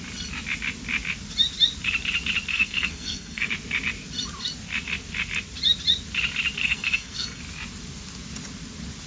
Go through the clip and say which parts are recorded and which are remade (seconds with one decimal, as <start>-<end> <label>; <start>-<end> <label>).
0.0-2.5 recorded; 2.5-3.5 remade; 3.5-6.6 recorded; 6.6-7.4 remade; 7.4-9.1 recorded